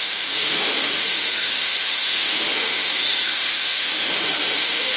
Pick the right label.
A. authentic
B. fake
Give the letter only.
B